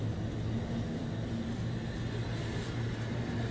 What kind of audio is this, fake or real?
real